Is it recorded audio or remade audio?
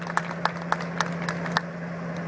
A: recorded